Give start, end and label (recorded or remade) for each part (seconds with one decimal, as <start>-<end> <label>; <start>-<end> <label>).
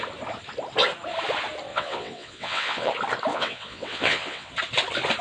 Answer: 0.0-1.7 recorded; 1.7-2.9 remade; 2.9-3.3 recorded; 3.3-4.5 remade; 4.5-5.2 recorded